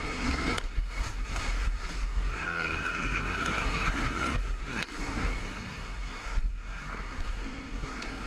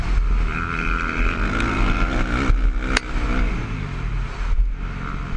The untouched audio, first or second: second